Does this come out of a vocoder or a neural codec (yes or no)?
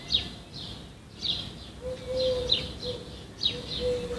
no